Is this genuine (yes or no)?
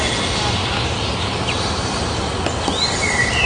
yes